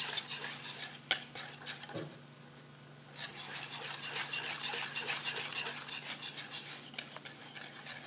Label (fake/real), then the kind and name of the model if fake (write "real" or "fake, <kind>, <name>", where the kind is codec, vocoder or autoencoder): real